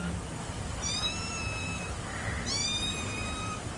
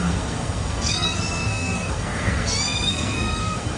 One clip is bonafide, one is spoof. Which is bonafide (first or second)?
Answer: first